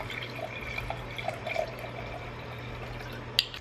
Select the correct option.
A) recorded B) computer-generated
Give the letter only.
A